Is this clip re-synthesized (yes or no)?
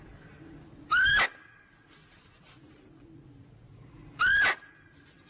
no